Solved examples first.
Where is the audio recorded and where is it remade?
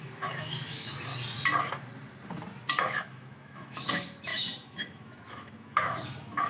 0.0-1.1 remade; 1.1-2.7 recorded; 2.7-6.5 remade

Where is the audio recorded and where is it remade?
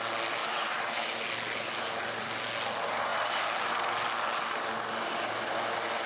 0.0-0.4 recorded; 0.4-1.2 remade; 1.2-6.1 recorded